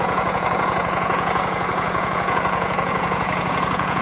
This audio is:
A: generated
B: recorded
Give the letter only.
A